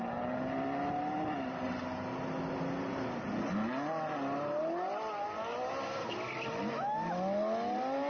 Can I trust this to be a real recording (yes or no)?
yes